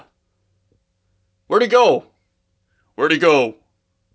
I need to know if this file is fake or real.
real